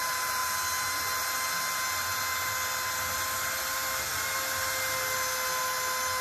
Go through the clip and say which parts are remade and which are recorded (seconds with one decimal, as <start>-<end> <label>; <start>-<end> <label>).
0.0-6.2 recorded

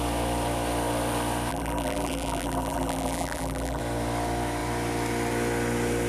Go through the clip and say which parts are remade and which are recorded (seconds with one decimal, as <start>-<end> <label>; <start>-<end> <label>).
0.0-1.5 recorded; 1.5-3.8 remade; 3.8-6.1 recorded

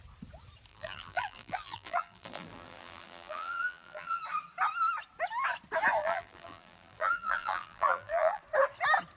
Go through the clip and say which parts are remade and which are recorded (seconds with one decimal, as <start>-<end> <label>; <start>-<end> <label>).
0.0-0.7 recorded; 0.7-4.2 remade; 4.2-6.0 recorded; 6.0-8.4 remade; 8.4-9.2 recorded

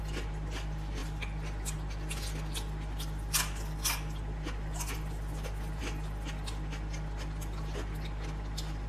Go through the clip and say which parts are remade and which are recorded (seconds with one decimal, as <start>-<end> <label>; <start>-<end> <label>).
0.0-8.9 recorded

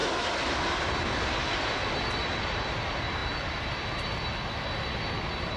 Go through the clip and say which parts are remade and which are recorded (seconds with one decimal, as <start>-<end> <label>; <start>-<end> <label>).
0.0-0.6 remade; 0.6-2.2 recorded; 2.2-2.7 remade; 2.7-5.6 recorded

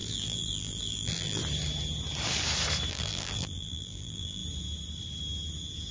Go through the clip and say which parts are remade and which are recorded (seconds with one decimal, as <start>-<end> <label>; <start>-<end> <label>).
0.0-1.4 remade; 1.4-2.9 recorded; 2.9-4.4 remade; 4.4-5.9 recorded

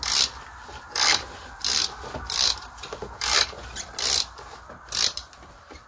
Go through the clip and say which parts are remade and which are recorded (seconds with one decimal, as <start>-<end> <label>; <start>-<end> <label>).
0.0-3.0 recorded; 3.0-3.6 remade; 3.6-5.1 recorded; 5.1-5.9 remade

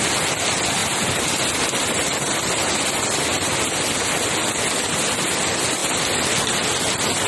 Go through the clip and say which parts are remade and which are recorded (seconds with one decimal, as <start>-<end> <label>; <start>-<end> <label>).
0.0-0.8 recorded; 0.8-4.9 remade; 4.9-5.8 recorded; 5.8-6.5 remade; 6.5-7.3 recorded